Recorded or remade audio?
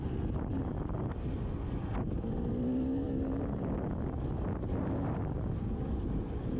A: recorded